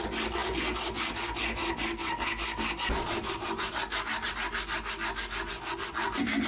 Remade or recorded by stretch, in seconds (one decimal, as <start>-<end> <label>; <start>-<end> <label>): 0.0-6.5 recorded